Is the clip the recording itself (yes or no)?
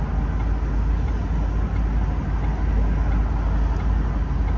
yes